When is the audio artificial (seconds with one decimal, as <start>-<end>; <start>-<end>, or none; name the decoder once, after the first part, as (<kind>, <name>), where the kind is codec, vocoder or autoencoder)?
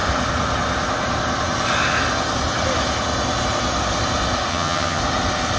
4.5-5.0 (vocoder, HiFi-GAN)